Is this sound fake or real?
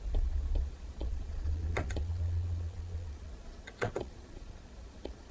fake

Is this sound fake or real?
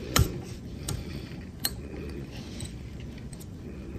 fake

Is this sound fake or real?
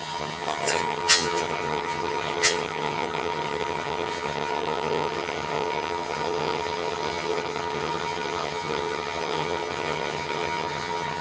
fake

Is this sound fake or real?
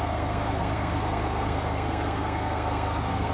fake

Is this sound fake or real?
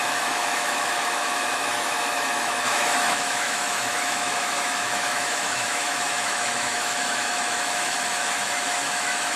fake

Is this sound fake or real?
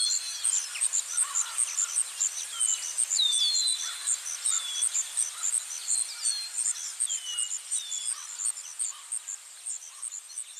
real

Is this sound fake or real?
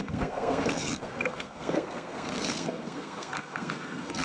fake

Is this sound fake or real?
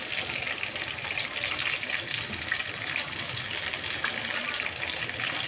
real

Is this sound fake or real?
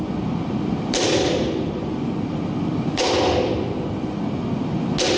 real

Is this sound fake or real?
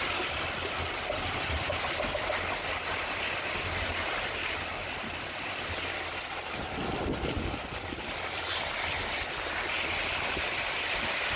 real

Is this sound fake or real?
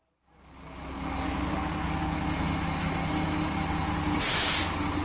real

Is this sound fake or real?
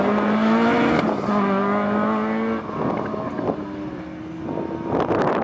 real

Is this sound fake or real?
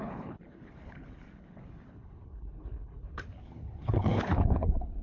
fake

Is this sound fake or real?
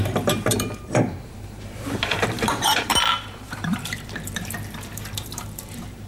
fake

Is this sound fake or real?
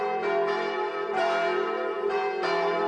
real